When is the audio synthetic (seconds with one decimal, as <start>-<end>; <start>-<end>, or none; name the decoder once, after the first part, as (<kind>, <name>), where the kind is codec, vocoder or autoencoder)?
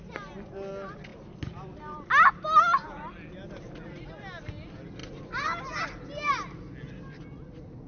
none